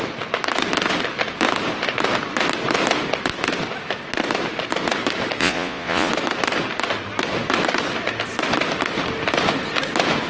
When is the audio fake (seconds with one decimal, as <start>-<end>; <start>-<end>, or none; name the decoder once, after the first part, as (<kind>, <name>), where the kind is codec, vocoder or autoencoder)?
5.4-6.1 (vocoder, Vocos)